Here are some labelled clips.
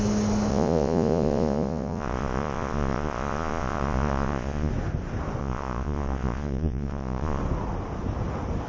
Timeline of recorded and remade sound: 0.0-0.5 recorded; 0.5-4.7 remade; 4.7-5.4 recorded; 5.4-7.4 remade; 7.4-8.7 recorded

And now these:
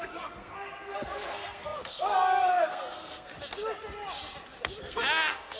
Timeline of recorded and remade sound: 0.0-3.3 remade; 3.3-4.8 recorded; 4.8-5.6 remade